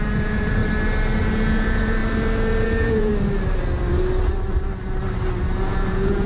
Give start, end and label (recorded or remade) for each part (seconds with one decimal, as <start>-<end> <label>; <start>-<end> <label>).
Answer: 0.0-0.6 remade; 0.6-1.2 recorded; 1.2-2.0 remade; 2.0-2.6 recorded; 2.6-3.1 remade; 3.1-5.7 recorded; 5.7-6.3 remade